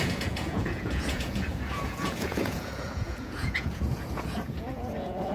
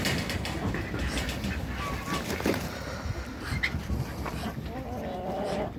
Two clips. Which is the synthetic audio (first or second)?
first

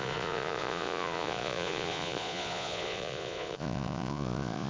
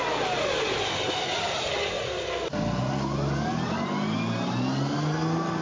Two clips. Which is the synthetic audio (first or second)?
first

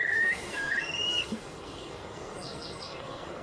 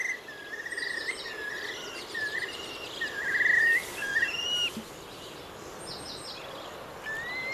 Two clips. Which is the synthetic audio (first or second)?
first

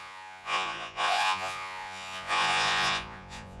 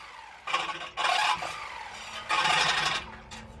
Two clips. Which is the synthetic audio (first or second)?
first